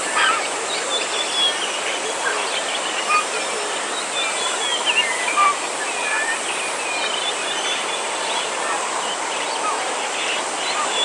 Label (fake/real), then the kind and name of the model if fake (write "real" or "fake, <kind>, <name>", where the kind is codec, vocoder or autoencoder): real